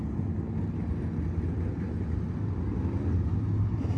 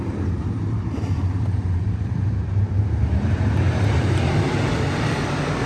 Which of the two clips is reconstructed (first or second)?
second